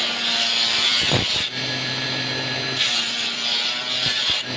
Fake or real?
fake